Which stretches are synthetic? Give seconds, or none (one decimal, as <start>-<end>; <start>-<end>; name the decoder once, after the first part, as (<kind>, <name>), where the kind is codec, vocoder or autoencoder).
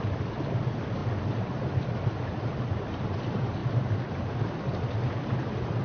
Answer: none